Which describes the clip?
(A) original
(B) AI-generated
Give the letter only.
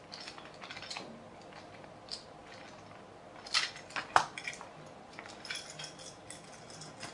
A